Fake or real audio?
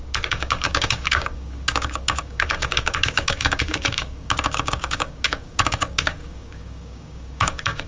fake